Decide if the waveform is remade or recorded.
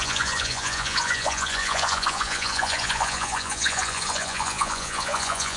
remade